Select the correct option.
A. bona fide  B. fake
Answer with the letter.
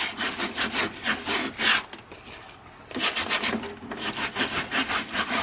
A